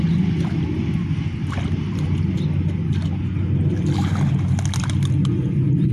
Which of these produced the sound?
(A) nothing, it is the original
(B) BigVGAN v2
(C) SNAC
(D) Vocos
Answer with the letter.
A